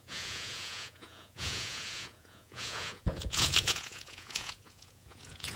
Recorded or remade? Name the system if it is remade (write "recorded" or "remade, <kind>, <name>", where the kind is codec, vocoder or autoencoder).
remade, vocoder, Vocos